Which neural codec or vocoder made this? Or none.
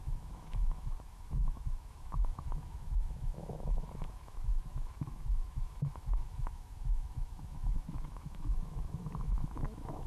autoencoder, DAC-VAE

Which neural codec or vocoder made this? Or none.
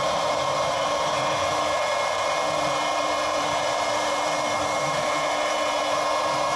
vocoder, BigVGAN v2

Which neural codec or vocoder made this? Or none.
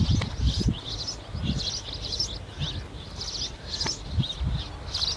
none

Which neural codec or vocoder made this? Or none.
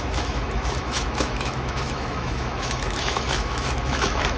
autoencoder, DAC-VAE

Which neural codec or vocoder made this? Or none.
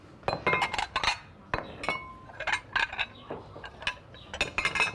none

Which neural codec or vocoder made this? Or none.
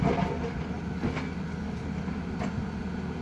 none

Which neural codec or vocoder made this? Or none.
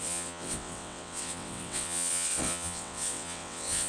vocoder, WaveNeXt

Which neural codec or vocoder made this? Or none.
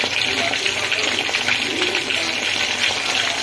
none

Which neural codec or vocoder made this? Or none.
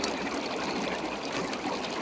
none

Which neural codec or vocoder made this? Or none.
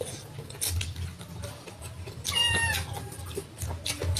none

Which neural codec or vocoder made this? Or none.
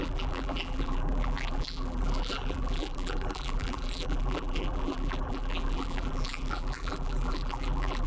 vocoder, BigVGAN v2